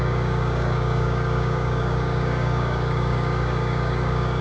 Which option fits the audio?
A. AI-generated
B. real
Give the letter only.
A